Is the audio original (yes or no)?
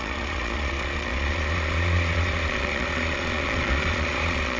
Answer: no